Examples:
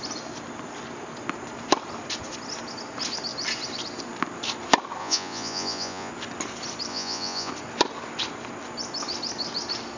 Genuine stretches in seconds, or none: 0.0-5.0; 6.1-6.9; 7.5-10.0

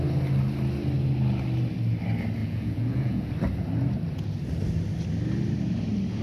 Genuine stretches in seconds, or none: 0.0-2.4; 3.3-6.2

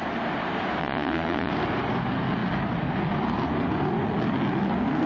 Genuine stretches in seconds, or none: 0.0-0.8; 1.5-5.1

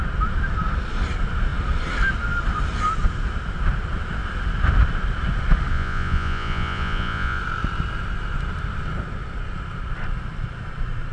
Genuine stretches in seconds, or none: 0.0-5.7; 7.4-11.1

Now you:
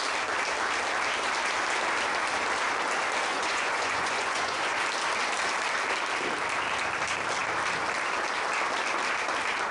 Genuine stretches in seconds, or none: 0.0-3.3; 4.7-9.7

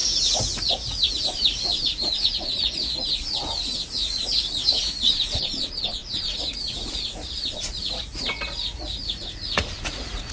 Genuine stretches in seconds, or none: none